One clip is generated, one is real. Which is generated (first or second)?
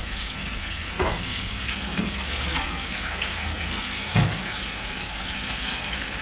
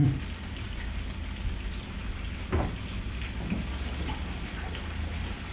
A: first